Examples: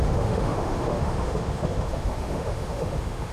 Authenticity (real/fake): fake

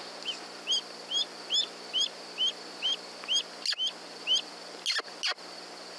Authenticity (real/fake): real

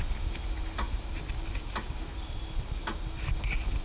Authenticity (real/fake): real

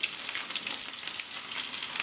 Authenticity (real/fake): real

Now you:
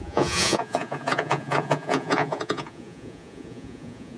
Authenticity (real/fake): fake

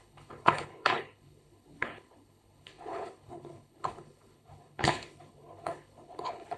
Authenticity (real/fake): fake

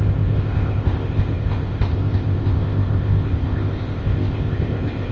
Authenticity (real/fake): fake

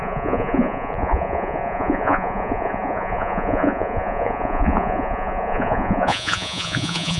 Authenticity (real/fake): fake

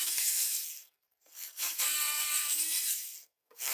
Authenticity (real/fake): fake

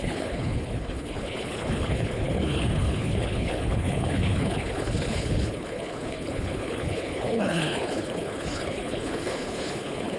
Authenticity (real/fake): fake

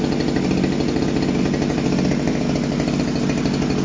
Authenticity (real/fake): real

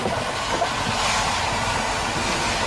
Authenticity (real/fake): real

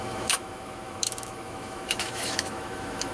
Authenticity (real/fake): fake